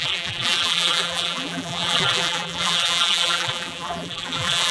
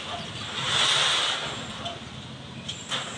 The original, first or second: second